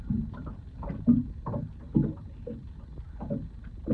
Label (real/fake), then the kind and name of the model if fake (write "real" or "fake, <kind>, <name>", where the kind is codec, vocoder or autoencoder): real